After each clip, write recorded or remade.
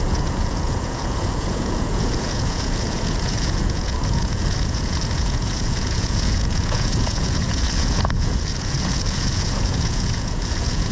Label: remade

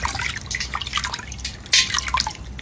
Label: recorded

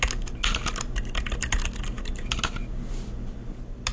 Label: recorded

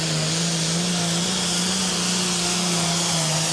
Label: recorded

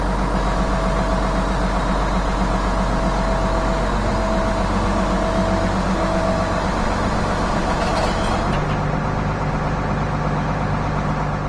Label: recorded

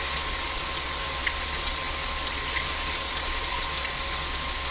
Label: remade